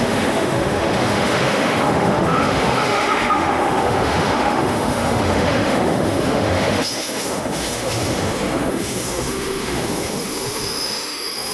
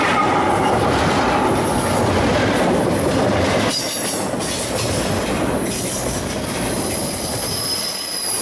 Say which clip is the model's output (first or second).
first